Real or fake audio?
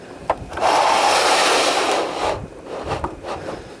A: fake